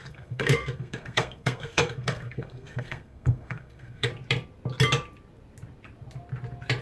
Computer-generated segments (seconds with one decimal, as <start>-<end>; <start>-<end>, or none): 0.0-4.1

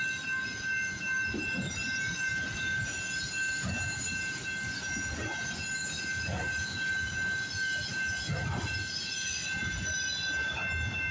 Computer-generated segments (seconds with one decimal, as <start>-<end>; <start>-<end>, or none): none

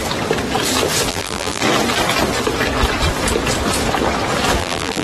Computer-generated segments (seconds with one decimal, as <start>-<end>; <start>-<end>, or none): 1.1-1.6; 4.6-5.0

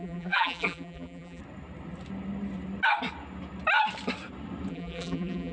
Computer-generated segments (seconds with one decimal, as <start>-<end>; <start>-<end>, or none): 0.0-1.4; 4.7-5.5

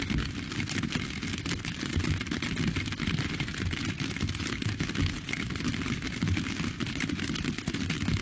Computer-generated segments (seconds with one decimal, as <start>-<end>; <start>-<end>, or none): none

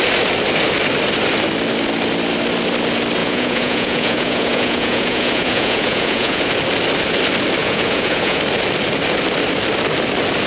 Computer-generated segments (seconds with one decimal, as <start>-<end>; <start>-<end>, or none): 3.2-6.4; 7.6-8.4

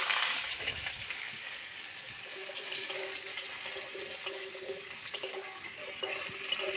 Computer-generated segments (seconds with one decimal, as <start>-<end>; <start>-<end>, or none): 0.0-3.3; 4.3-5.8

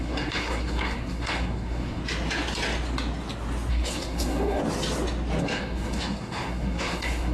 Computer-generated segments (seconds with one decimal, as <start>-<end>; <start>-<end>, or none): 0.0-2.0; 3.7-4.6; 5.4-7.3